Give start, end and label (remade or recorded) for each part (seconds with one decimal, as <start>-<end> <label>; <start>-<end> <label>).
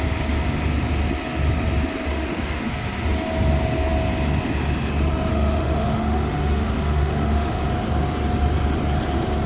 0.0-2.1 recorded; 2.1-2.6 remade; 2.6-5.3 recorded; 5.3-7.7 remade; 7.7-9.5 recorded